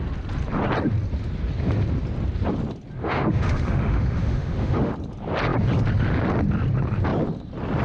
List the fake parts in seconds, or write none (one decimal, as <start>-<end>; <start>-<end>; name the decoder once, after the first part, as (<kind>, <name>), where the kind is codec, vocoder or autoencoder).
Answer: 3.0-4.9 (autoencoder, DAC-VAE)